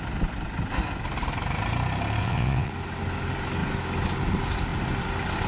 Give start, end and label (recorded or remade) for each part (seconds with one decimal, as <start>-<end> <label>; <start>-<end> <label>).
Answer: 0.0-2.2 recorded; 2.2-2.7 remade; 2.7-5.5 recorded